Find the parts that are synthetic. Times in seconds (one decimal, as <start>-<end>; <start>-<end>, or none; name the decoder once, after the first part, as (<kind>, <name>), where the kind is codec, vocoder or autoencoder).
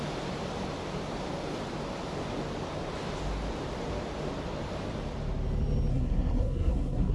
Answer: 5.9-7.1 (codec, SNAC)